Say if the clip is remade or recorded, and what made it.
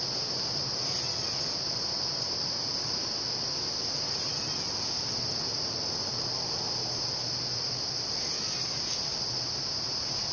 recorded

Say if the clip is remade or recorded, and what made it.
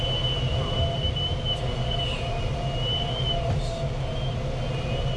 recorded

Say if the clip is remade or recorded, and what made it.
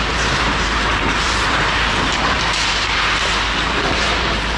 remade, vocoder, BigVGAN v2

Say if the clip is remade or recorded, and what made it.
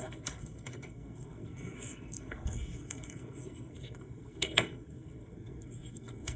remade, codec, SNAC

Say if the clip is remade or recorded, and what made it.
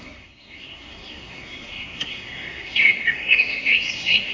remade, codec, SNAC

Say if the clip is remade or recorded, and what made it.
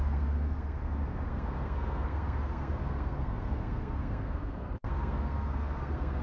remade, codec, SNAC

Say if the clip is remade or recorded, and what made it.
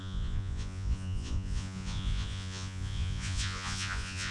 remade, vocoder, Vocos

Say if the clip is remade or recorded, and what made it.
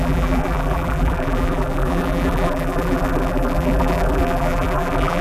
remade, vocoder, BigVGAN v2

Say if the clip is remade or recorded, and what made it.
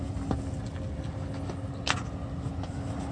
recorded